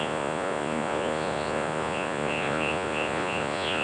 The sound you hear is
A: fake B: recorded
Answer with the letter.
A